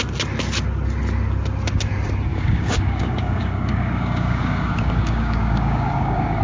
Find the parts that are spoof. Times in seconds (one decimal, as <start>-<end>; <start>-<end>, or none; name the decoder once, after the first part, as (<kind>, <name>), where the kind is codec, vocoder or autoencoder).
2.3-6.4 (codec, DAC)

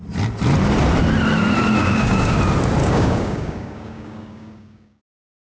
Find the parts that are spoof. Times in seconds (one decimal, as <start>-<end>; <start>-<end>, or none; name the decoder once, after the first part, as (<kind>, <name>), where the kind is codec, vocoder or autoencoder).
1.8-2.4 (codec, DAC); 2.8-5.0

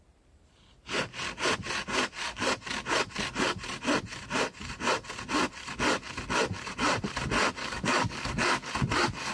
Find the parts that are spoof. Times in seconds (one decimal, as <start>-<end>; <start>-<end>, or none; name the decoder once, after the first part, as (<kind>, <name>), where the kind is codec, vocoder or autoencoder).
7.6-8.7 (codec, DAC)

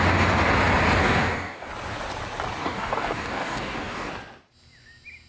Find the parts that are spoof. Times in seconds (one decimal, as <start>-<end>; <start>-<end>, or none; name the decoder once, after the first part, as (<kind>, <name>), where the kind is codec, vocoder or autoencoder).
1.0-1.7 (codec, DAC); 2.6-4.1

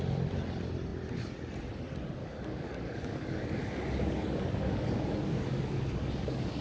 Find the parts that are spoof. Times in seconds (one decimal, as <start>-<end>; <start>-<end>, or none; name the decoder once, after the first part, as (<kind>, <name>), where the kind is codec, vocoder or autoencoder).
2.2-6.6 (codec, DAC)

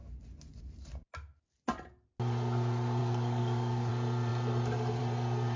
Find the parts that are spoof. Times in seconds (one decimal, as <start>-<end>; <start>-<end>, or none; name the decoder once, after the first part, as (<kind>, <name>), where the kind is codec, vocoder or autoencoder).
3.0-3.9 (codec, DAC)

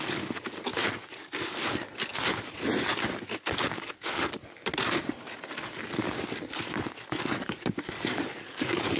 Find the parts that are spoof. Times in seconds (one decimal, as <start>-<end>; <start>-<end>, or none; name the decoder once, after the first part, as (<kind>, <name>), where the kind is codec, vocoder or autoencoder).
0.0-0.7 (codec, DAC); 3.7-4.4; 7.2-9.0